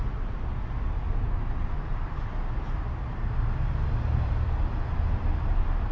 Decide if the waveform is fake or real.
real